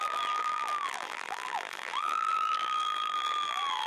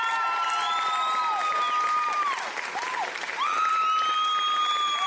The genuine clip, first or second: second